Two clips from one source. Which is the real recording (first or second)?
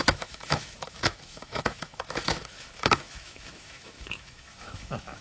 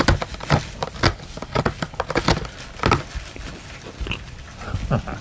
second